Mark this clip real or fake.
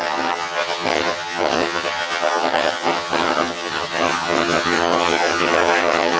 fake